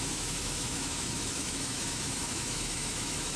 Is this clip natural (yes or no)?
no